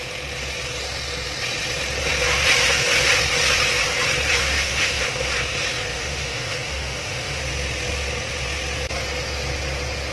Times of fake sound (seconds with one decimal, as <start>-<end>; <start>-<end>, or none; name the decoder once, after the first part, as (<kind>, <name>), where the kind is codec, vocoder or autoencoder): 4.4-5.3 (autoencoder, DAC-VAE); 5.9-7.4